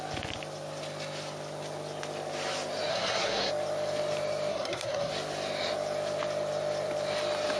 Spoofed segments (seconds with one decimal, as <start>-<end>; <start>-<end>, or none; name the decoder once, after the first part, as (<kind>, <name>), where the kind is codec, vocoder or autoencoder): 2.9-3.5 (codec, SNAC); 4.5-5.1